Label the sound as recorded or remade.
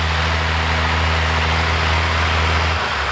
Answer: recorded